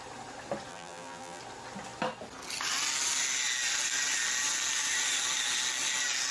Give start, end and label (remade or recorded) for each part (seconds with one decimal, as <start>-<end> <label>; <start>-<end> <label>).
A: 0.0-0.7 recorded; 0.7-1.4 remade; 1.4-6.3 recorded